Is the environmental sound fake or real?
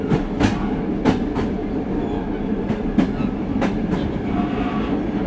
real